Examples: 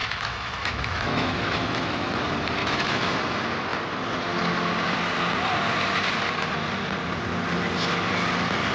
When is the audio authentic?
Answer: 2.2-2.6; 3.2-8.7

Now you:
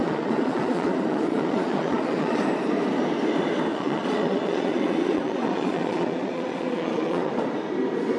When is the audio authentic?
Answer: 2.4-3.7; 7.3-8.2

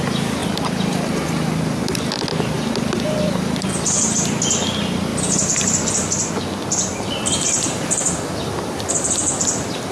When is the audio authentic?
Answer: 0.0-0.4; 4.4-5.1; 6.3-6.9; 9.3-9.9

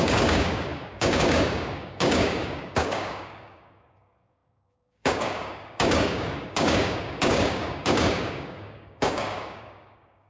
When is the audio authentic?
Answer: none

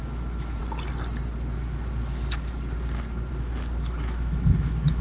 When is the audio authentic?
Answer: 0.6-3.3

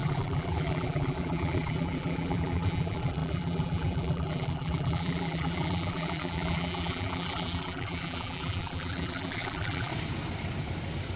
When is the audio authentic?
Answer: 9.9-11.2